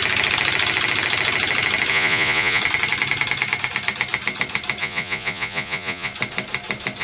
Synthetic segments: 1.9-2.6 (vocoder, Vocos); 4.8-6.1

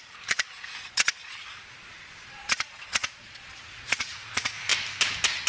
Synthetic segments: 0.8-4.1 (vocoder, Vocos)

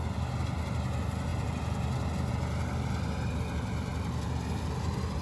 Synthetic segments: none

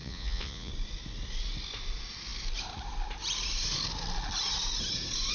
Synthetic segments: 0.0-0.7 (vocoder, Vocos)

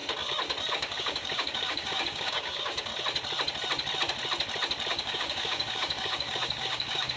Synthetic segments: 0.7-2.9 (codec, DAC); 4.9-7.2

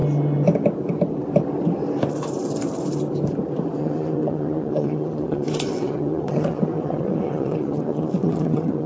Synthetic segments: 3.8-8.9 (vocoder, WaveNeXt)